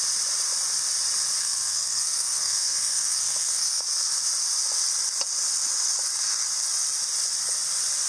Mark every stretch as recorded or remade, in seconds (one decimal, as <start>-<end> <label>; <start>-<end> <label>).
0.0-1.4 recorded; 1.4-3.8 remade; 3.8-8.1 recorded